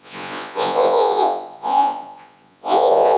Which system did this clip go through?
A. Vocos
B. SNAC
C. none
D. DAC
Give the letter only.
A